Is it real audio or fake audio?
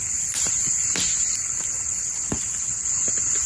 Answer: real